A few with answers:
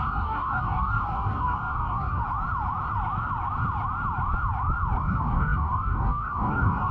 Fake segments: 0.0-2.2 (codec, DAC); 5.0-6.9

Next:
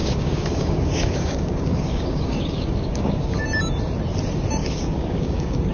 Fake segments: 0.0-3.4 (codec, DAC); 4.6-5.7

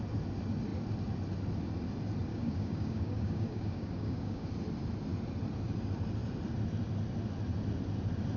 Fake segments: 2.3-4.5 (codec, DAC)

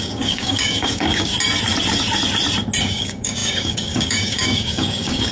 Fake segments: 0.0-1.3 (codec, DAC); 2.8-5.3